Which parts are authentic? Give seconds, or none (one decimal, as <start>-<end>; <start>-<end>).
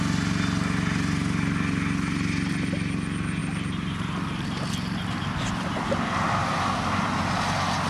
0.0-7.9